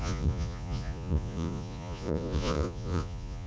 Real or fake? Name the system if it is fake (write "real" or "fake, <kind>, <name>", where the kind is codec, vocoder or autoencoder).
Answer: fake, vocoder, Vocos